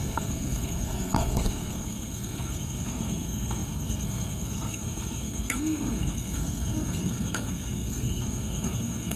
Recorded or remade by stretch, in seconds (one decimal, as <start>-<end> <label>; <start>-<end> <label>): 0.0-9.2 remade